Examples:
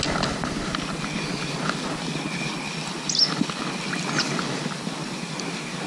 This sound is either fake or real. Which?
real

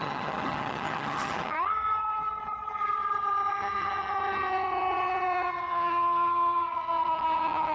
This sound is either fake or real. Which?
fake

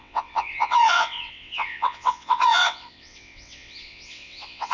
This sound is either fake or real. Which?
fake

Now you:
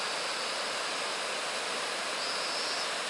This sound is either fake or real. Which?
real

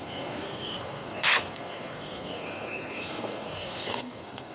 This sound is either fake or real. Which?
fake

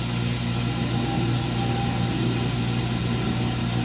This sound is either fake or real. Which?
real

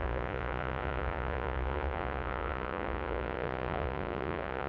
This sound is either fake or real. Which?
fake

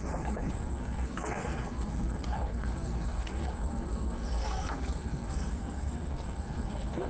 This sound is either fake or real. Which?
fake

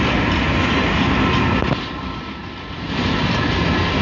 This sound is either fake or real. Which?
real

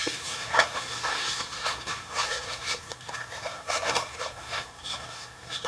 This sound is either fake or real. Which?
fake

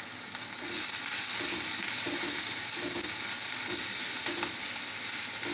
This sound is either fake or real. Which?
real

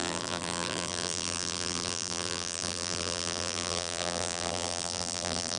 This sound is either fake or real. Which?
fake